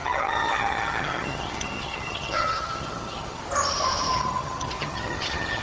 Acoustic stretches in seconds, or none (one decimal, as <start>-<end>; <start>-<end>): 3.4-4.1

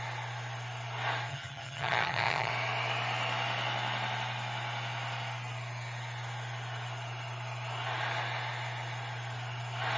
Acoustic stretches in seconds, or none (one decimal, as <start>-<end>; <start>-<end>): 0.0-1.3; 2.5-10.0

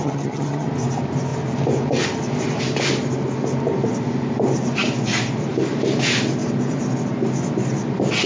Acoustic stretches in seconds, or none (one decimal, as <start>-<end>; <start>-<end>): 0.7-8.3